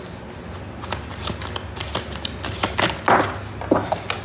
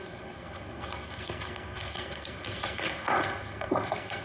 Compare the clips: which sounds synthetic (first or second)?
second